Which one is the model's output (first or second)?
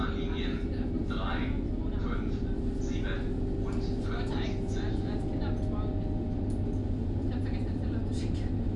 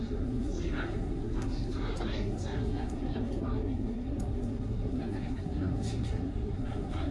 second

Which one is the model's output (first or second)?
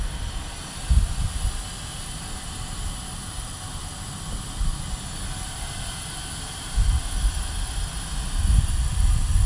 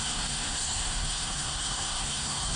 second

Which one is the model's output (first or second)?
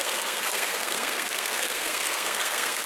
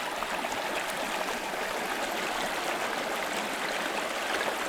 first